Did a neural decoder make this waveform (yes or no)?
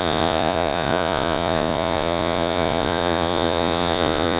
yes